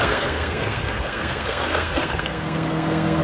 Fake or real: fake